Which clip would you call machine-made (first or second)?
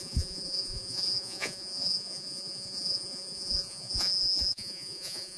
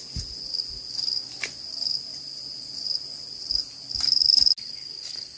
first